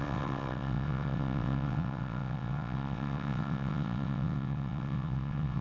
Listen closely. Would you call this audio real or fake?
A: fake